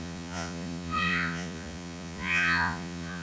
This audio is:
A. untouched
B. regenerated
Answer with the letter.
B